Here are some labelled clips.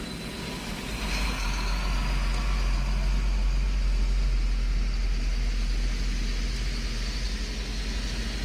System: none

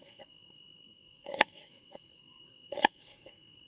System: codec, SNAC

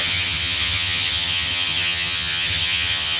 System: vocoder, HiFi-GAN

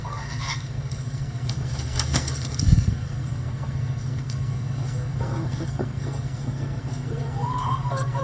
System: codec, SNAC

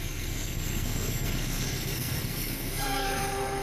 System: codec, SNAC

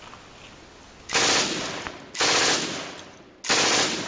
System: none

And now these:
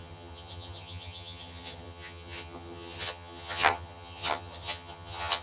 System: vocoder, HiFi-GAN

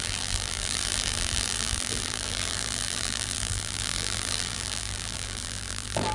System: vocoder, BigVGAN v2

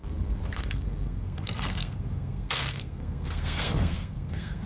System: codec, SNAC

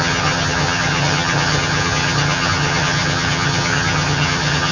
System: vocoder, HiFi-GAN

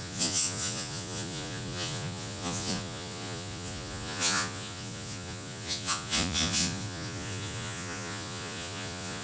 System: vocoder, Vocos